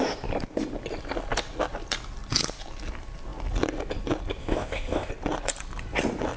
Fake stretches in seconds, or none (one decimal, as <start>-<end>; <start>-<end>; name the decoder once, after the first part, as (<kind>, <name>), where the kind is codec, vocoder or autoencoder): 4.4-5.1 (codec, ZipCodec)